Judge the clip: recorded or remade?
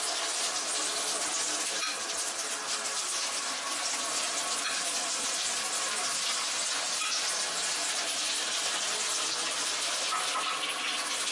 recorded